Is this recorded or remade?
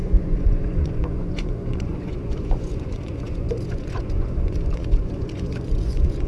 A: remade